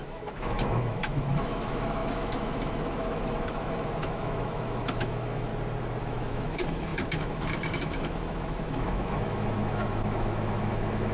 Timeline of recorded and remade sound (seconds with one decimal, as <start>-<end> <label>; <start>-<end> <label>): 0.0-5.5 remade; 5.5-6.0 recorded; 6.0-11.1 remade